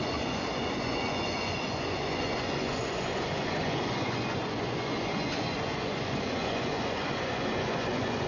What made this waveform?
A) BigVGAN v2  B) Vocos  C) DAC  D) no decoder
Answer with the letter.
B